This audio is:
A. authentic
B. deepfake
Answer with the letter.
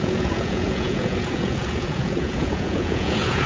B